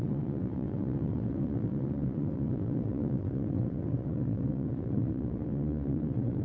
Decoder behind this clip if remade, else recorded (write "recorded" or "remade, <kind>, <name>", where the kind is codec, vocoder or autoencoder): remade, vocoder, WaveNeXt